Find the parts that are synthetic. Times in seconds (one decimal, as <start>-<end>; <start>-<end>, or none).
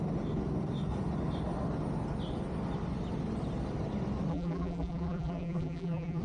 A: 4.3-6.2